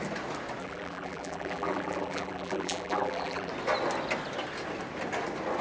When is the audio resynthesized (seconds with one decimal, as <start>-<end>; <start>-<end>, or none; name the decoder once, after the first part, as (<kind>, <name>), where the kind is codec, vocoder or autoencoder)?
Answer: 0.6-3.5 (vocoder, BigVGAN v2)